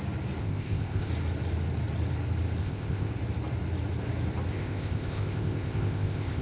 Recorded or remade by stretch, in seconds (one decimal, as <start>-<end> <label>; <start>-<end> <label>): 0.0-0.4 recorded; 0.4-1.1 remade; 1.1-2.6 recorded; 2.6-3.1 remade; 3.1-4.5 recorded; 4.5-6.4 remade